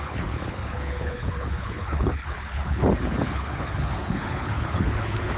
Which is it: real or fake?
fake